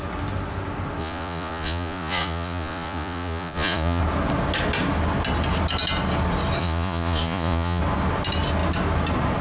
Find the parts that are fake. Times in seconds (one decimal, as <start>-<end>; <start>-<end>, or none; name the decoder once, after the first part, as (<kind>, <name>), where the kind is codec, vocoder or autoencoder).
1.0-4.0 (vocoder, Vocos); 6.6-7.8